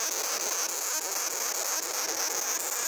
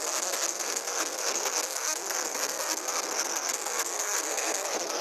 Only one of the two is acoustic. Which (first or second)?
first